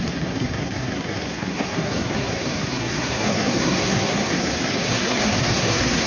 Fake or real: fake